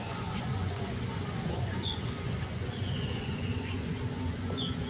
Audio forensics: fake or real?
fake